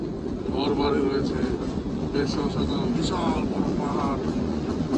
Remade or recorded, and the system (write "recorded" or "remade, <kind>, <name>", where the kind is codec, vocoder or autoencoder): remade, vocoder, Vocos